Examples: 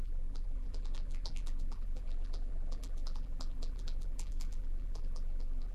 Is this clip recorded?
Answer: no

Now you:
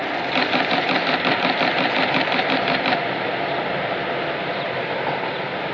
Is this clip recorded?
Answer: no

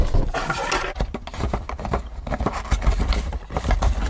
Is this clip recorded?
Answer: yes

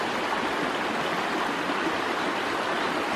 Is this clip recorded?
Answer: yes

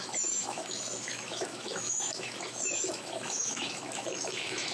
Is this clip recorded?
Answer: no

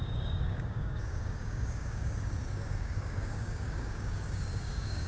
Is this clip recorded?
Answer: no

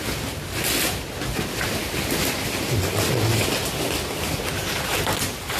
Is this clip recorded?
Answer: yes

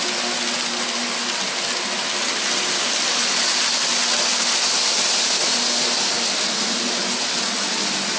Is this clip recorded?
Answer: yes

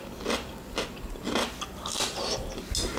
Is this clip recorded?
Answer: yes